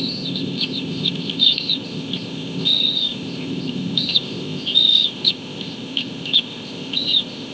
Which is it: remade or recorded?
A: remade